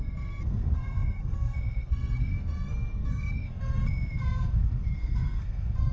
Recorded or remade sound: remade